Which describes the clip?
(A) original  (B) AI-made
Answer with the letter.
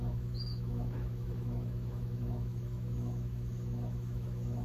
B